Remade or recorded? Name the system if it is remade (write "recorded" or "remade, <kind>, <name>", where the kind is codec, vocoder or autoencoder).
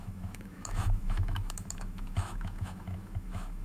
remade, autoencoder, DAC-VAE